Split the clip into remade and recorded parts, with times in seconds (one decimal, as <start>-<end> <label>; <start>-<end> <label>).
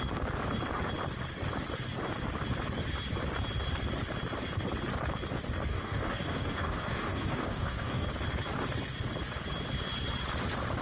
0.0-5.7 recorded; 5.7-8.1 remade; 8.1-10.8 recorded